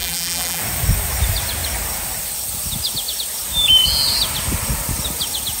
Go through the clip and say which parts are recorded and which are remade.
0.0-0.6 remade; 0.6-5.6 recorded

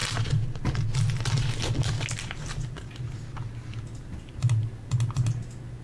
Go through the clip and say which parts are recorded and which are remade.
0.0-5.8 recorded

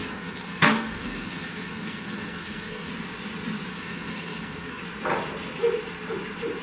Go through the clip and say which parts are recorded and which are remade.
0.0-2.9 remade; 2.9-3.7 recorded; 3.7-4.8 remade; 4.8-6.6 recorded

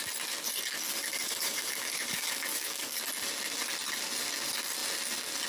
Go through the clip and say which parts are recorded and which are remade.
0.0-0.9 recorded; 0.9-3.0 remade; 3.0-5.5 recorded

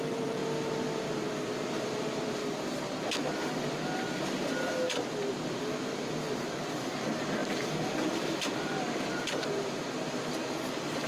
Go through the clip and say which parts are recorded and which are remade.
0.0-0.4 remade; 0.4-1.7 recorded; 1.7-2.4 remade; 2.4-6.4 recorded; 6.4-11.1 remade

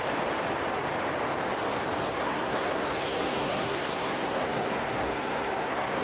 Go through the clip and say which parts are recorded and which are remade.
0.0-2.1 recorded; 2.1-6.0 remade